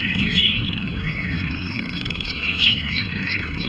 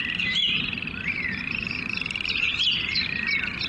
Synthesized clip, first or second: first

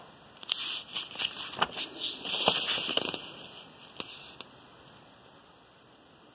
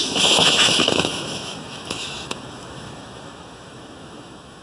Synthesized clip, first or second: second